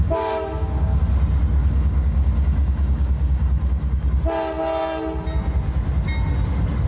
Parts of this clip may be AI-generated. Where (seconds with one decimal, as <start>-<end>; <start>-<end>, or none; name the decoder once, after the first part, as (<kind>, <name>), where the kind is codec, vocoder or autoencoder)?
0.0-1.0 (codec, DAC); 1.6-4.2